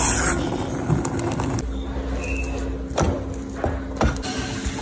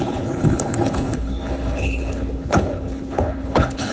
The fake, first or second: second